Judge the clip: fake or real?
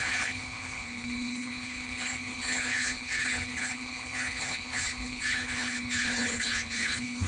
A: fake